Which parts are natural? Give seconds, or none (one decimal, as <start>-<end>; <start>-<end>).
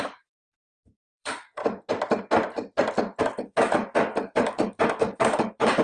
1.6-3.2